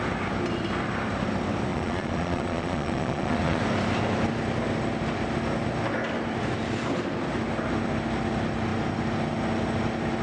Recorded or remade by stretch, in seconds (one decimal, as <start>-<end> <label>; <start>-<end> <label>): 0.0-1.7 recorded; 1.7-3.6 remade; 3.6-10.2 recorded